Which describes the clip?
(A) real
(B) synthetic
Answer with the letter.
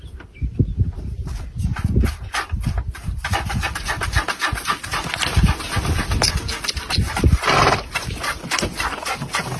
A